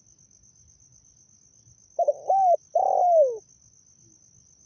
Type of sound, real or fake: real